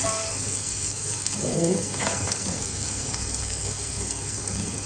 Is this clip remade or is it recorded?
remade